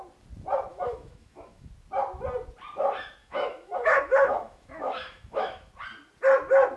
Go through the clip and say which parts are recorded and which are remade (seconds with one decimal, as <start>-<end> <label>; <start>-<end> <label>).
0.0-0.7 recorded; 0.7-1.7 remade; 1.7-3.2 recorded; 3.2-5.7 remade; 5.7-6.8 recorded